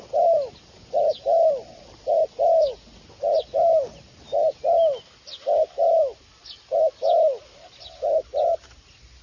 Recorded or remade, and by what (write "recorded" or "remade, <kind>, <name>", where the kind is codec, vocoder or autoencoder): recorded